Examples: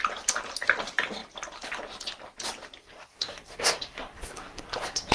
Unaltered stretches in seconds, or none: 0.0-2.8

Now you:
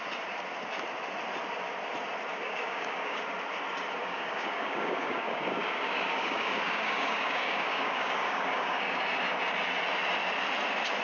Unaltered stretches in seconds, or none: 0.0-2.3; 3.2-4.0; 9.0-11.0

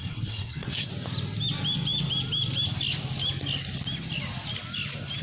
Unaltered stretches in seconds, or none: 0.9-5.2

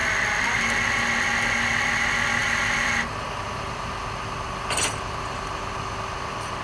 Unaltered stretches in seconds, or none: 0.0-6.6